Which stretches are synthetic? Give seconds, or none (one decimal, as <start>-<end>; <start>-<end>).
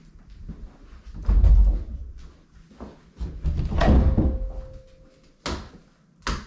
none